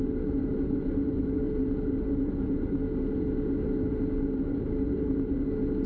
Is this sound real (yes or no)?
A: yes